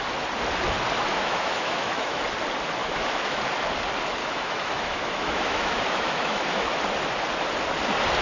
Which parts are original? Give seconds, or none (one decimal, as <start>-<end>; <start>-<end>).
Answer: 0.0-1.1; 2.2-2.8; 3.4-4.2; 6.8-8.2